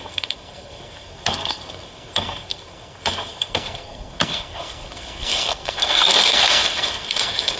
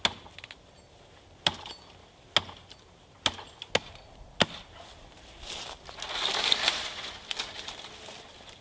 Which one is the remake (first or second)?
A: first